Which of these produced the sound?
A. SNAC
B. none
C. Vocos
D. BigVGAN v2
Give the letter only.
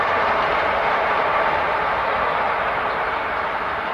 D